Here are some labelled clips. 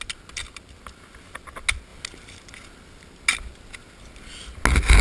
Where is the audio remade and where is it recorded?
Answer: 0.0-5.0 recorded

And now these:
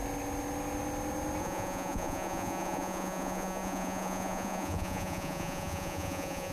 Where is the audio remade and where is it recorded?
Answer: 0.0-1.4 recorded; 1.4-6.5 remade

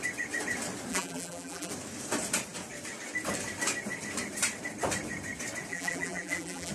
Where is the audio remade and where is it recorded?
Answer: 0.0-0.9 recorded; 0.9-1.7 remade; 1.7-5.7 recorded; 5.7-6.7 remade

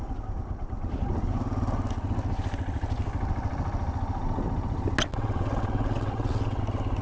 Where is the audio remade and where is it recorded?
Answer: 0.0-5.1 recorded; 5.1-6.6 remade; 6.6-7.0 recorded

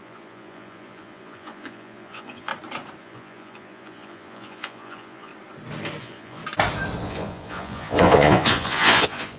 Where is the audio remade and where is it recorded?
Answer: 0.0-2.5 remade; 2.5-3.0 recorded; 3.0-5.3 remade; 5.3-6.0 recorded; 6.0-6.4 remade; 6.4-7.0 recorded; 7.0-9.4 remade